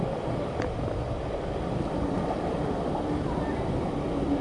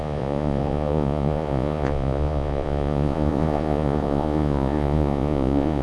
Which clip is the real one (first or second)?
first